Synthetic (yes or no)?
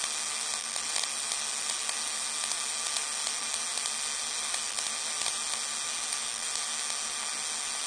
no